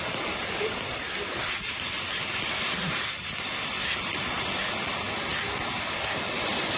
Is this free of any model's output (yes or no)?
yes